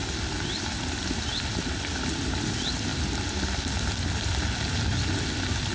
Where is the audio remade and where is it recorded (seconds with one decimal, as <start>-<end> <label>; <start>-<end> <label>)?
0.0-5.7 recorded

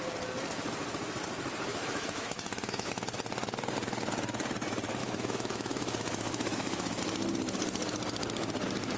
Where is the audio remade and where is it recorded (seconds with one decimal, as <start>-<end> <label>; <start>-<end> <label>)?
0.0-1.7 recorded; 1.7-3.0 remade; 3.0-5.0 recorded; 5.0-7.0 remade; 7.0-9.0 recorded